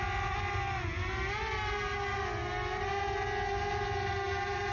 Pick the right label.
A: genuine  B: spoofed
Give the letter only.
A